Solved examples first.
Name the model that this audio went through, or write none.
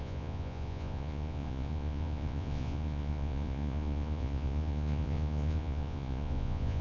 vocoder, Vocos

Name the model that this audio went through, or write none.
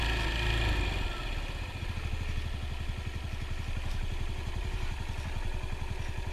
none